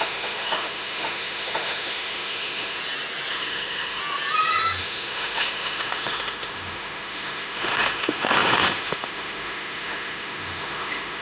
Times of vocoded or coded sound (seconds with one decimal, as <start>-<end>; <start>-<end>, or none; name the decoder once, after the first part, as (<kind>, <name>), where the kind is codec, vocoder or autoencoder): 0.0-2.8 (autoencoder, DAC-VAE); 3.3-4.0; 4.8-11.2